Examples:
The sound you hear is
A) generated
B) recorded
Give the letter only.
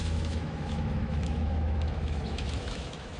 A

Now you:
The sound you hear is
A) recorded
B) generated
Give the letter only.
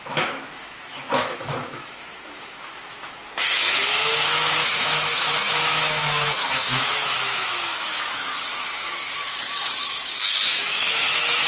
B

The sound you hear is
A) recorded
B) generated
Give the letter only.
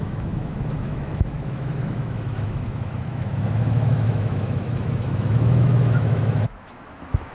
B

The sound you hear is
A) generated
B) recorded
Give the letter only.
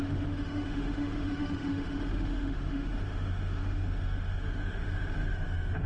A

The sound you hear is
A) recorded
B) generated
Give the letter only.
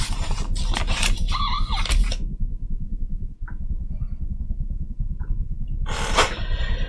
A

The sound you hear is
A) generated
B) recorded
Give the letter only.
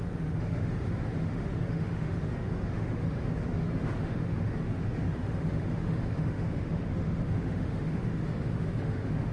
A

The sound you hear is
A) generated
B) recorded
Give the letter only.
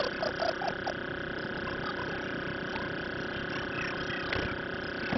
B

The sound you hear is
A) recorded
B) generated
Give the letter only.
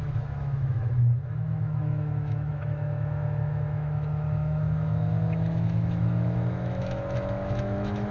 B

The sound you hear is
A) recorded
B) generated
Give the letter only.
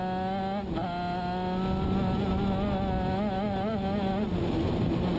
A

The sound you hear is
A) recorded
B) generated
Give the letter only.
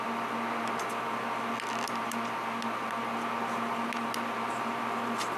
A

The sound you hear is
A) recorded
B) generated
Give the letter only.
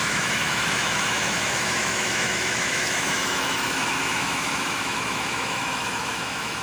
B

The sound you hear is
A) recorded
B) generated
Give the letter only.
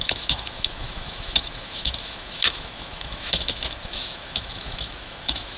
B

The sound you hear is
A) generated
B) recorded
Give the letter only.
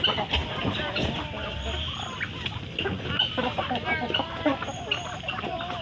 B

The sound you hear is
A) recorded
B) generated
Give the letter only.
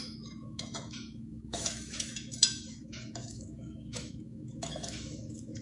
B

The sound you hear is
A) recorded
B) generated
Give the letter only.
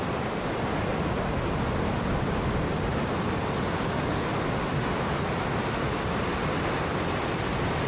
A